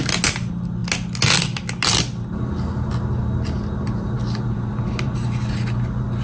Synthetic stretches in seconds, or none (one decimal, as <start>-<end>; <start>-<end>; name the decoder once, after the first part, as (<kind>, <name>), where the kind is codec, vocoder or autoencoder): none